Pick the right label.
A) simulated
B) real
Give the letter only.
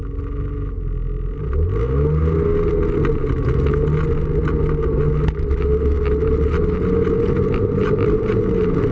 B